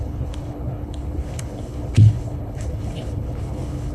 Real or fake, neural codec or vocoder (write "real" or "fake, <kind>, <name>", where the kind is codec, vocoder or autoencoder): fake, codec, HILCodec